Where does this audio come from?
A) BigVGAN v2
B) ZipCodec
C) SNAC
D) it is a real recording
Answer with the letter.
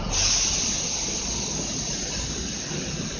D